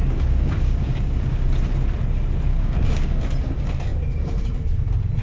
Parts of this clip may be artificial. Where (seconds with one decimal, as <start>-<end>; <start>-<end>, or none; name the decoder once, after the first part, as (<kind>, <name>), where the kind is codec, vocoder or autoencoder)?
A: 0.0-1.5 (codec, DAC); 2.5-3.2